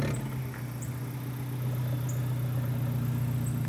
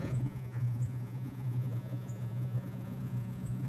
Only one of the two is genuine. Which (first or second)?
first